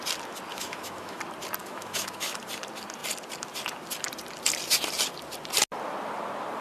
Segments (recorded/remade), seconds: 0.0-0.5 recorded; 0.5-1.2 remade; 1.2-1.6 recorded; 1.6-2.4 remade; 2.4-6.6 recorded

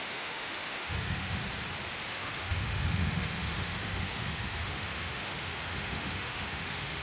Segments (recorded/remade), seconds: 0.0-1.4 remade; 1.4-2.1 recorded; 2.1-7.0 remade

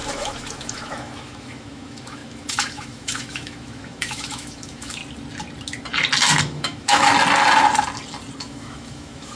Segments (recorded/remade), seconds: 0.0-5.0 remade; 5.0-6.4 recorded; 6.4-7.1 remade; 7.1-8.4 recorded; 8.4-9.4 remade

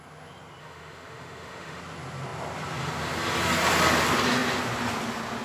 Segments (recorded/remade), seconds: 0.0-0.6 recorded; 0.6-1.8 remade; 1.8-5.4 recorded

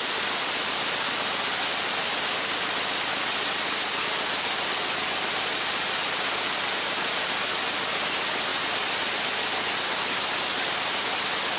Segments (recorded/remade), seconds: 0.0-11.6 recorded